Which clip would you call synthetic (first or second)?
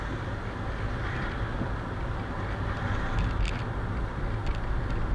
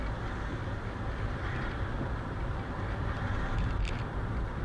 second